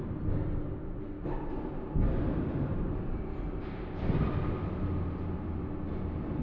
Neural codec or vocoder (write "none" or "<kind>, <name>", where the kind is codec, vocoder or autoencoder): none